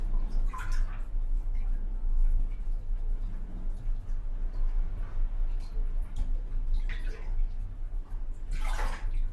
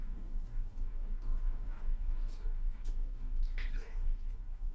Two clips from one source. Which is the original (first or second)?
first